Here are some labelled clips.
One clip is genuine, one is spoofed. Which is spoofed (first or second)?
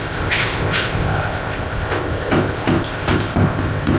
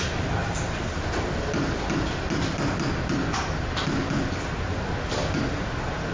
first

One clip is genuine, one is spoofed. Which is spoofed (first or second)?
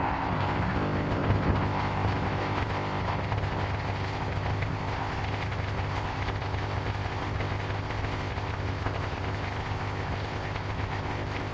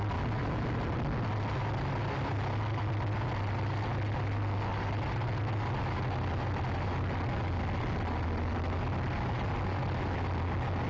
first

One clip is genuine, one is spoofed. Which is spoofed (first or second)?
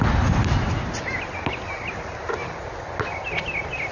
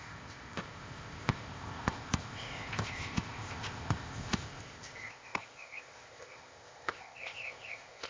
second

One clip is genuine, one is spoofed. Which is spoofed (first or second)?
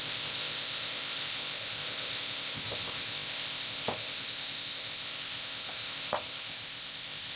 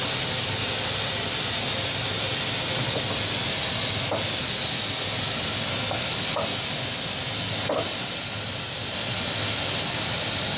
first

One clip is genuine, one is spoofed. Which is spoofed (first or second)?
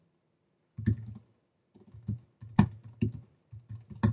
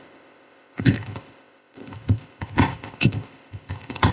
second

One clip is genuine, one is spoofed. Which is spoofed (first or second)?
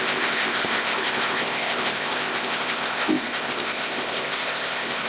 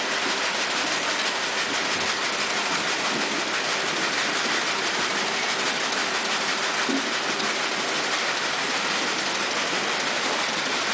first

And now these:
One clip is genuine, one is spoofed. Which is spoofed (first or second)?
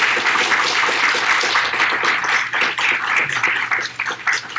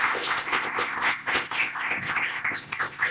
second